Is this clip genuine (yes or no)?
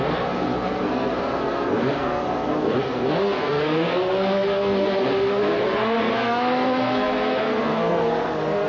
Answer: no